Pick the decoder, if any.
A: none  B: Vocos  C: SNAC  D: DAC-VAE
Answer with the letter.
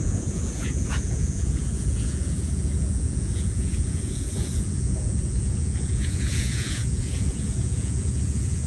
B